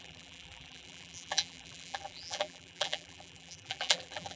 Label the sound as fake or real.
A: fake